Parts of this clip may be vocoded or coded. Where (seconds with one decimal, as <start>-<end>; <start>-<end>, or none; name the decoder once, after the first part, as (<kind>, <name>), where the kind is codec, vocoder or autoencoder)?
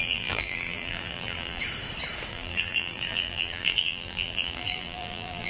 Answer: 0.0-1.6 (vocoder, BigVGAN v2); 2.3-5.5